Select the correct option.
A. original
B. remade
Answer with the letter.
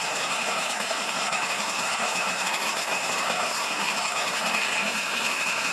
B